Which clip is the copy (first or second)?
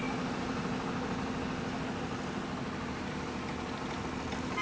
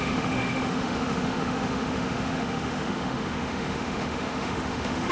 second